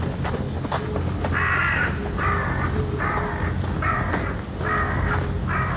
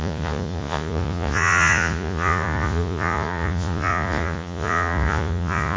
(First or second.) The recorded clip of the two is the first